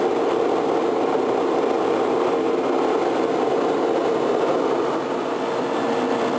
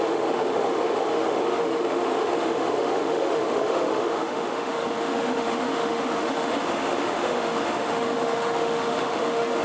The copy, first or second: second